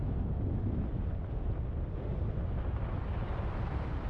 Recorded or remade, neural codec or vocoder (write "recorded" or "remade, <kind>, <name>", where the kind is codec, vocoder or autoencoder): recorded